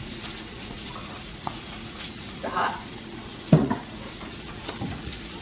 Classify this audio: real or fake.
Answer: fake